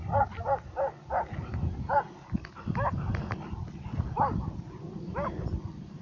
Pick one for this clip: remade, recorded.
recorded